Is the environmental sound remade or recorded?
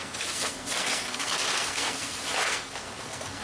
remade